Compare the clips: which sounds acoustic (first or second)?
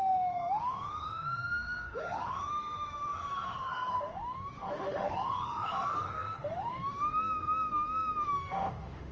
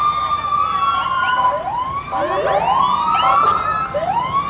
second